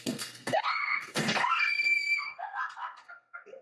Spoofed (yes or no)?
yes